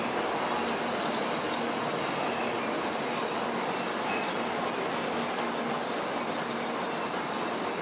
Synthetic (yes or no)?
no